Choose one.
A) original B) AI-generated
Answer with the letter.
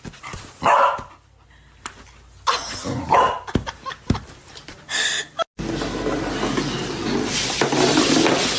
A